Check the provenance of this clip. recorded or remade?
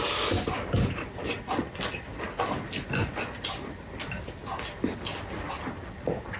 recorded